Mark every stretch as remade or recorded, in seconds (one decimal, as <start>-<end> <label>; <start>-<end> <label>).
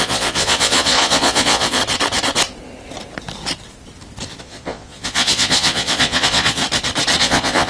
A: 0.0-1.8 remade; 1.8-4.4 recorded; 4.4-6.6 remade; 6.6-7.2 recorded; 7.2-7.7 remade